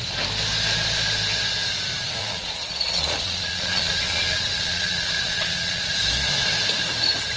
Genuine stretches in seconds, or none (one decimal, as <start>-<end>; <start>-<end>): 0.0-2.2; 5.9-7.4